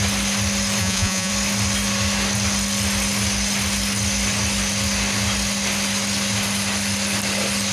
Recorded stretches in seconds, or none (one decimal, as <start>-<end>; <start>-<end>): 0.0-0.8; 1.3-7.7